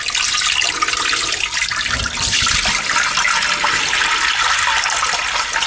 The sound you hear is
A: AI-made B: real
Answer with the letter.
B